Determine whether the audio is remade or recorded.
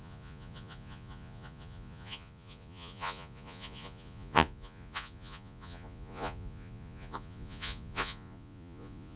remade